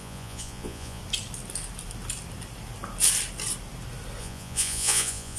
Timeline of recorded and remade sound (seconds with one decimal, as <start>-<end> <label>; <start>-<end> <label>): 0.0-1.0 remade; 1.0-4.2 recorded; 4.2-5.4 remade